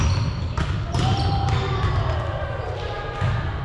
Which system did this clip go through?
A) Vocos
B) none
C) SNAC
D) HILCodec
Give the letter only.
B